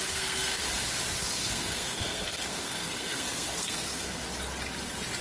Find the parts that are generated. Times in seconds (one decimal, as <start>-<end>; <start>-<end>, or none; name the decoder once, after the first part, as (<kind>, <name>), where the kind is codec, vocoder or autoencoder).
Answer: 0.0-0.6 (codec, SNAC); 1.2-4.2